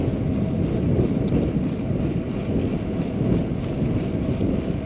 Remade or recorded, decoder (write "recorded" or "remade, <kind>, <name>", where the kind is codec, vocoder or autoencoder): recorded